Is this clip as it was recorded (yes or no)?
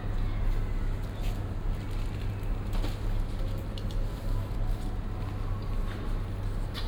yes